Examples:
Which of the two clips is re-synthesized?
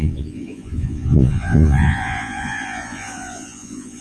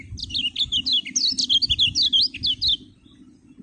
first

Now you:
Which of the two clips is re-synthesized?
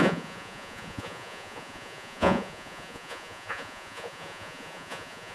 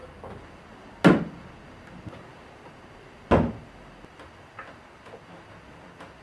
first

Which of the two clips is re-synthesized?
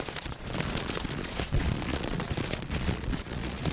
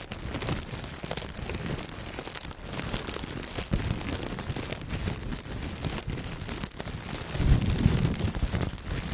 first